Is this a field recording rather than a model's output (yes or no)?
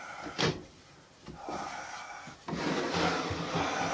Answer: yes